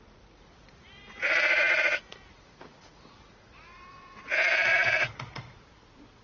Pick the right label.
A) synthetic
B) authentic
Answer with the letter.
A